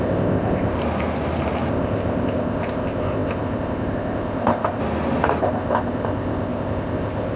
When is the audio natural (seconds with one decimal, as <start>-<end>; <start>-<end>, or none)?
0.8-1.7; 4.8-5.4